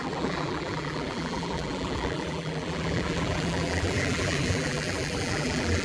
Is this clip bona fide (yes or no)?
no